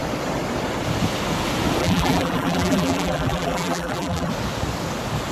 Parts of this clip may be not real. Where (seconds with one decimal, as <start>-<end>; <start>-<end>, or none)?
1.8-4.3